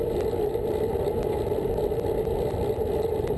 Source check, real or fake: real